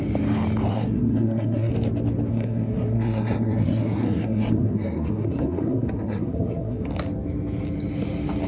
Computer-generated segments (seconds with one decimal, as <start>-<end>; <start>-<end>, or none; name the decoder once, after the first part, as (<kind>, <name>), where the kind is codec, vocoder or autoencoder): 0.7-1.7 (codec, SNAC); 2.3-6.9